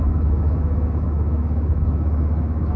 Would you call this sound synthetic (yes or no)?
yes